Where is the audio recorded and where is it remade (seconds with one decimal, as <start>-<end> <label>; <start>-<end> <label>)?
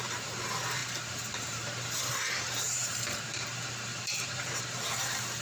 0.0-5.4 remade